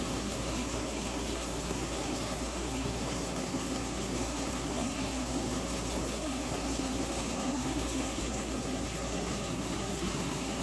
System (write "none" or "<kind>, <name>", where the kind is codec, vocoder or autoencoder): codec, SNAC